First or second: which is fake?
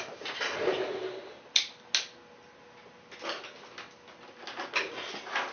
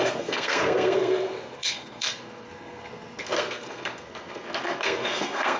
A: second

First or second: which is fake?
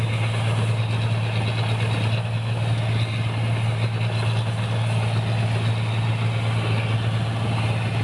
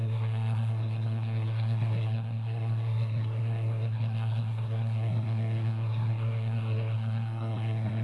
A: second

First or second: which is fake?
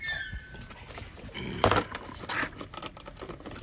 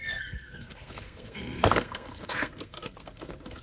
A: second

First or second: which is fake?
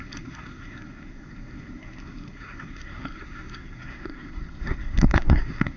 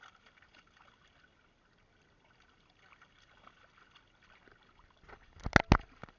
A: first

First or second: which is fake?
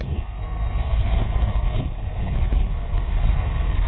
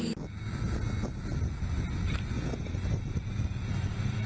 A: first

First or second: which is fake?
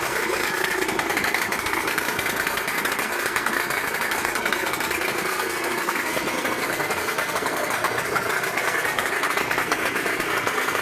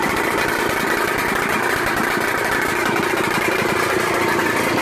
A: first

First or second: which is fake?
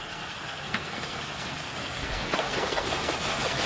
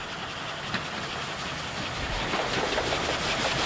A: first